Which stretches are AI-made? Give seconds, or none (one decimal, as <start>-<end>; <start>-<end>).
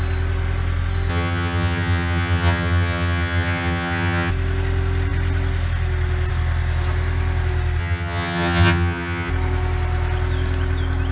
1.1-4.3; 7.8-9.3